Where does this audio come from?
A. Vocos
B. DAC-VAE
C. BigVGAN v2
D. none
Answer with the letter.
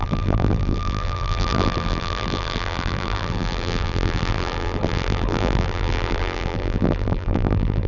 C